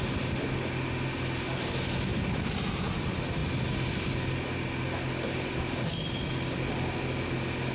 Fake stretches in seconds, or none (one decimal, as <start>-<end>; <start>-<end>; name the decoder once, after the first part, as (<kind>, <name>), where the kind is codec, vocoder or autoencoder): none